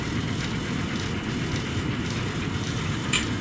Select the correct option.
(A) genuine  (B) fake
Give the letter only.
B